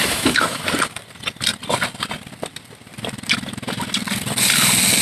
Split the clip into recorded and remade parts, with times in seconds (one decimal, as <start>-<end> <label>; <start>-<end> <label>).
0.0-0.6 remade; 0.6-5.0 recorded